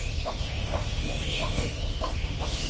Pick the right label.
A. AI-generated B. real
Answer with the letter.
A